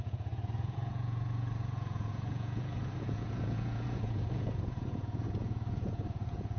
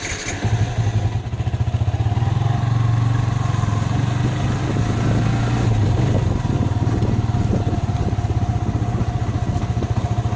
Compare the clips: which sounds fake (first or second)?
first